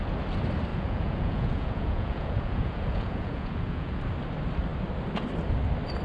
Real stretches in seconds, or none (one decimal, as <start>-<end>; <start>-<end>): 0.0-0.7; 4.0-6.0